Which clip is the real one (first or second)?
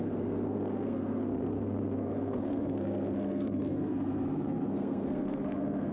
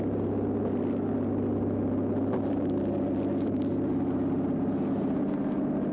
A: second